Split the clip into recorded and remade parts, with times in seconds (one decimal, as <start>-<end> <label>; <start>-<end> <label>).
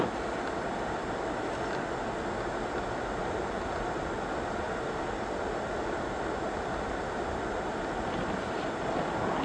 0.0-9.4 recorded